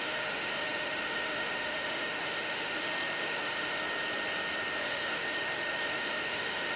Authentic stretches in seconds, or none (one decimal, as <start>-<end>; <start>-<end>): 3.8-4.8